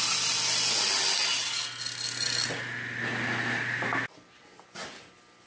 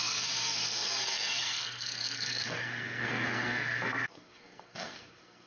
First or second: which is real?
first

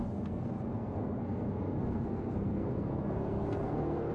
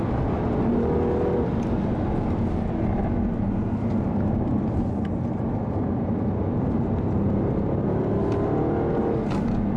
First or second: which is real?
second